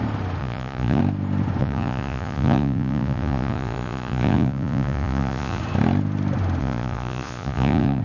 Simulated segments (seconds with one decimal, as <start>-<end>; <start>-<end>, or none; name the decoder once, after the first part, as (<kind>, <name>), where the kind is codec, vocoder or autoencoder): 0.4-1.0 (vocoder, Vocos); 1.6-5.6; 6.6-8.0